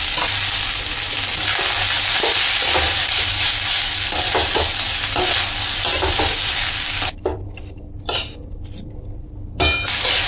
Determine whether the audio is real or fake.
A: real